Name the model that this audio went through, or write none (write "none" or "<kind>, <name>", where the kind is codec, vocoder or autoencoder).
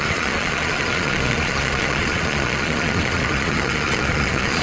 vocoder, Vocos